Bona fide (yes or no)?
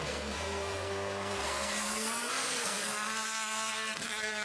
no